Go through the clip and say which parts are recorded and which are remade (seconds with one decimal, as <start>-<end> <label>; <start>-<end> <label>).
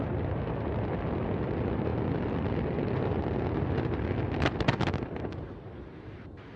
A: 0.0-6.6 recorded